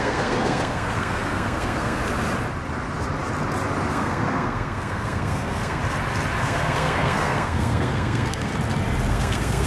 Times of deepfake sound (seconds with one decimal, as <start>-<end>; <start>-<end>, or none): 0.0-2.0; 3.9-5.8; 6.4-8.5; 9.1-9.7